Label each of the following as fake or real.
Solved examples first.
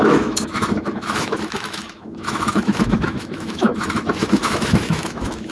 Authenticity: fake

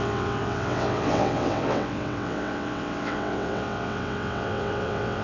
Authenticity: fake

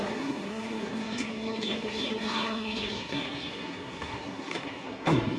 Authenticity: fake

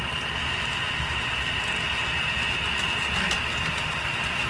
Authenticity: real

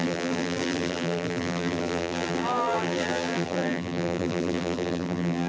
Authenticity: fake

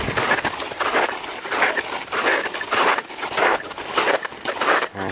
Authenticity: real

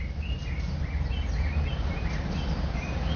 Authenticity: real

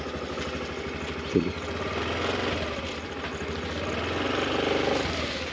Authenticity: real